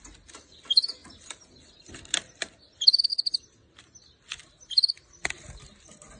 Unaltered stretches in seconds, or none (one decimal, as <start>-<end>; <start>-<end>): 0.0-6.2